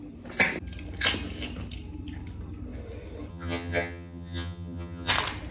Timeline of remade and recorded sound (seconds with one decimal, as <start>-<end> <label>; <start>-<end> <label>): 0.0-3.3 recorded; 3.3-5.1 remade; 5.1-5.5 recorded